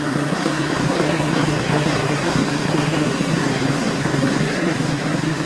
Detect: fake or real fake